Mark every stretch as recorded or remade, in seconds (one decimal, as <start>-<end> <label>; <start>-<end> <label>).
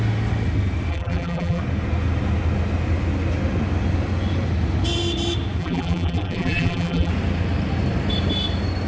0.0-0.9 recorded; 0.9-1.6 remade; 1.6-5.6 recorded; 5.6-7.1 remade; 7.1-8.9 recorded